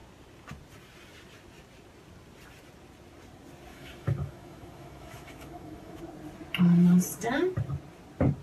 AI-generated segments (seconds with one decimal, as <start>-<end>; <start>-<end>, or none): 3.7-6.0